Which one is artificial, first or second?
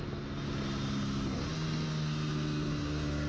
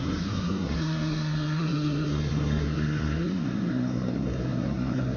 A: second